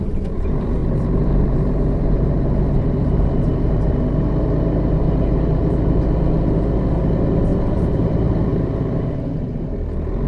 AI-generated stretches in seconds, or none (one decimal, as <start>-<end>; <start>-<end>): 0.8-3.9; 7.5-8.1; 8.5-9.4

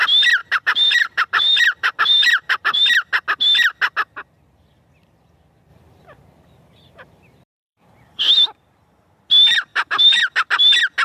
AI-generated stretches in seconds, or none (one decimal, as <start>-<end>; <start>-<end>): 0.4-2.8; 5.7-8.3; 9.7-10.3